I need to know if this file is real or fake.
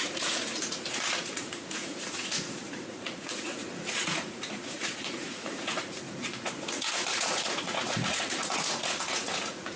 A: fake